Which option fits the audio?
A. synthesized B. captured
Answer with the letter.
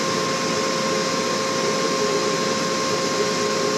B